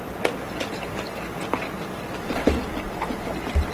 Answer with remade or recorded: recorded